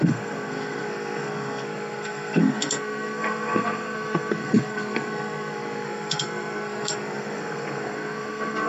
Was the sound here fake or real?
fake